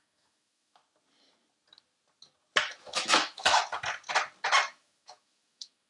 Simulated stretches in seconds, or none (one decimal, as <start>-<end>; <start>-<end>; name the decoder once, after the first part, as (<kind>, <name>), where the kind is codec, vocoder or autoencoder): 0.0-0.8 (autoencoder, DAC-VAE); 2.8-3.6; 4.7-5.9